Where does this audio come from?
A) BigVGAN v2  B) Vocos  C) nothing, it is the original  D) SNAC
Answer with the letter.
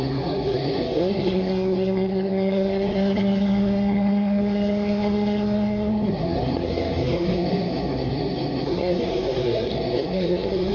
D